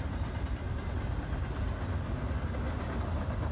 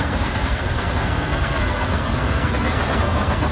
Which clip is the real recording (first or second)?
first